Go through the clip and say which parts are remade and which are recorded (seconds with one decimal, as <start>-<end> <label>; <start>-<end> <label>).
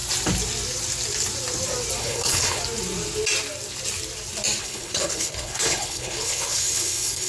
0.0-2.0 recorded; 2.0-2.6 remade; 2.6-4.6 recorded; 4.6-7.3 remade